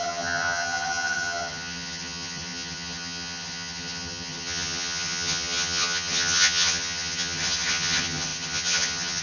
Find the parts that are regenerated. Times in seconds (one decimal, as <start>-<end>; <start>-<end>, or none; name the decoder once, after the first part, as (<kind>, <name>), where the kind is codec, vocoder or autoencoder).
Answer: 0.0-9.2 (vocoder, HiFi-GAN)